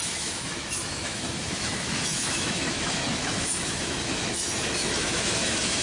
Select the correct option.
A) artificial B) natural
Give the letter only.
A